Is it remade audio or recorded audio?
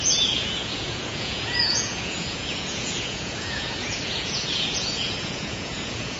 remade